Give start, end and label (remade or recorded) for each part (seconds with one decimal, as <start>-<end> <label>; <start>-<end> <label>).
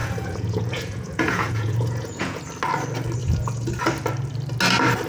0.0-2.4 remade; 2.4-3.2 recorded; 3.2-3.7 remade; 3.7-5.1 recorded